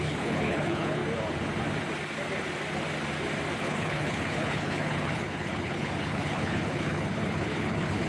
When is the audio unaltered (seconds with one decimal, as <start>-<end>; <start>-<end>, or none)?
1.0-3.6